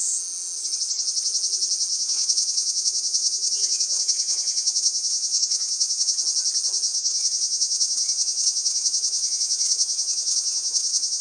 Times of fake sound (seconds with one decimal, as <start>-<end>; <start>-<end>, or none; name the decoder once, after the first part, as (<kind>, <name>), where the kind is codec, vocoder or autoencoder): 1.9-6.2 (vocoder, Vocos); 6.9-11.2